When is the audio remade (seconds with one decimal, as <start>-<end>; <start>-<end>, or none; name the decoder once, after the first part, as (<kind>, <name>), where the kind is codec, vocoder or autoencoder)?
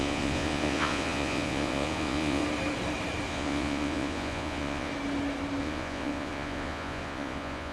0.0-2.4 (vocoder, Vocos); 3.3-4.9; 5.6-7.7